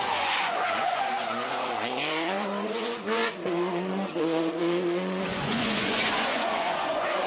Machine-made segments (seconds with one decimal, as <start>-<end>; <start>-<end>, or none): 0.0-7.3